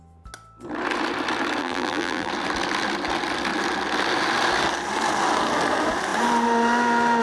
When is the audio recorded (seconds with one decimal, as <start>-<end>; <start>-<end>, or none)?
0.0-1.6; 2.3-7.2